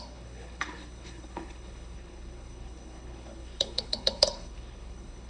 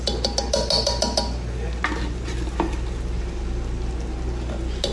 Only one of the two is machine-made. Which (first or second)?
first